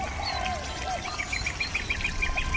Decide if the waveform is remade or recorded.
recorded